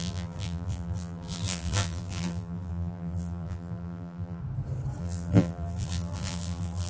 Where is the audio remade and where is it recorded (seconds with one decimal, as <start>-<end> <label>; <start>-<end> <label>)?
0.0-4.4 remade; 4.4-5.0 recorded; 5.0-6.9 remade